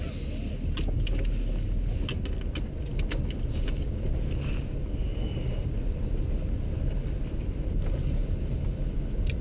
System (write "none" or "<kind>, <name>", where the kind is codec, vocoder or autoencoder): none